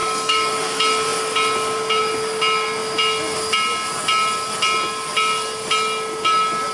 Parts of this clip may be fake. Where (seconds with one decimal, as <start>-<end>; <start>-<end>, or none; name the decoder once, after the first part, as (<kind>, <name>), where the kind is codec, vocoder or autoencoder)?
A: 0.0-0.5 (codec, DAC)